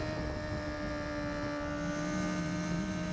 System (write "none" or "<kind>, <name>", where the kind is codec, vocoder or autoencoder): none